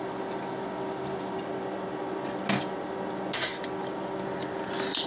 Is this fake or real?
real